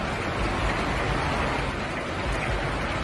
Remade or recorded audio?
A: recorded